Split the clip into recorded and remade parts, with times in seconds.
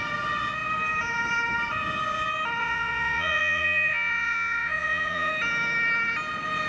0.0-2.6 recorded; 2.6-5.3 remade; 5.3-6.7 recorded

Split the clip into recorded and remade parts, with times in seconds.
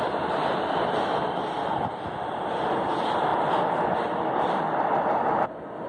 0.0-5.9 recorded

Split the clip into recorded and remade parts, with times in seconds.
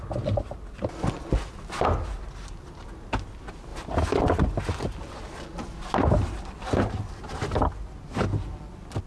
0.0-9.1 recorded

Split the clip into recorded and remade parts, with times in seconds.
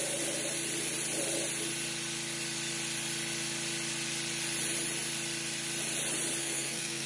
0.0-6.4 recorded; 6.4-7.1 remade